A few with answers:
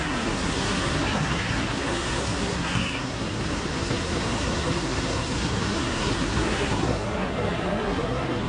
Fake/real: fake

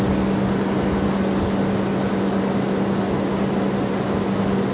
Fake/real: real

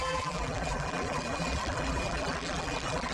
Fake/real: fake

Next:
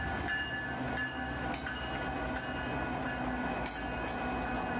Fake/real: real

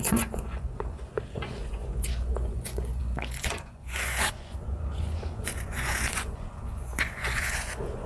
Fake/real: fake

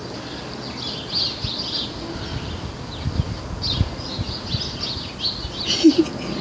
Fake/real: real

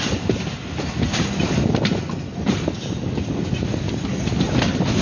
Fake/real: fake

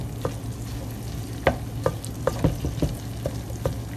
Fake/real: real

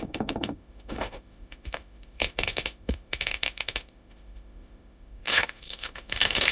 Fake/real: fake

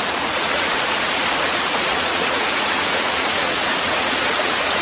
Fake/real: fake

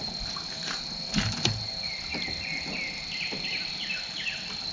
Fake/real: real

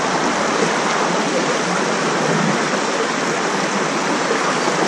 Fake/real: real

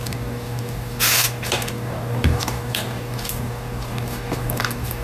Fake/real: fake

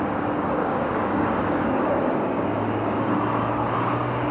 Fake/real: fake